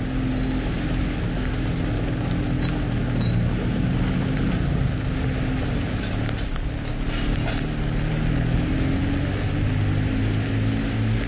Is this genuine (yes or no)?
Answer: yes